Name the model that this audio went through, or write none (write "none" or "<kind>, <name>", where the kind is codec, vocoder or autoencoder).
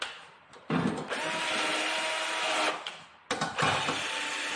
none